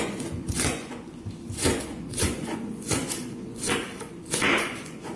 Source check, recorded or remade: remade